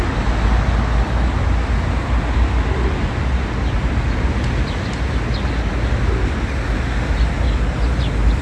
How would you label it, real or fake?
real